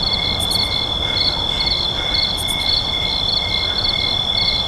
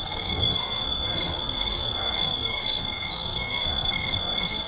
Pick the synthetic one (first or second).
second